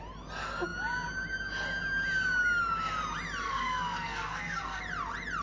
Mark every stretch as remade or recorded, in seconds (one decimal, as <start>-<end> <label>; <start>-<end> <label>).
0.0-3.4 recorded; 3.4-4.8 remade; 4.8-5.4 recorded